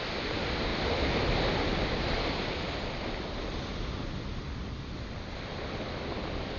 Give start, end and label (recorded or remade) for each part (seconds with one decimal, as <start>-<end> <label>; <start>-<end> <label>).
0.0-6.6 recorded